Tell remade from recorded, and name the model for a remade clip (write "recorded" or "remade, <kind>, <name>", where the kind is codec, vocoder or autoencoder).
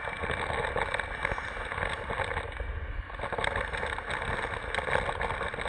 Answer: recorded